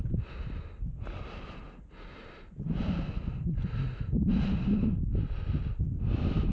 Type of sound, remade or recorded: recorded